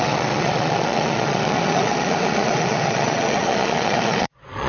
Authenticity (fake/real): fake